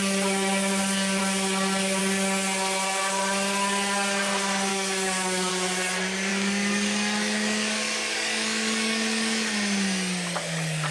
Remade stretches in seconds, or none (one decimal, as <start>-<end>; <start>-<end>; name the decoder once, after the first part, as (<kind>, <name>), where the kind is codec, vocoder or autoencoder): 4.7-5.5 (codec, DAC); 6.3-9.5